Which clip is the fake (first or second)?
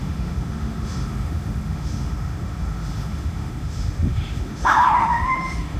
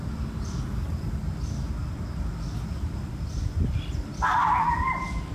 first